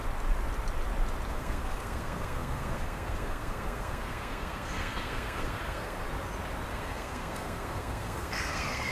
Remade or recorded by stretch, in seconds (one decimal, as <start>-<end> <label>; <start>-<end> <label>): 0.0-1.3 recorded; 1.3-6.0 remade; 6.0-6.7 recorded; 6.7-8.9 remade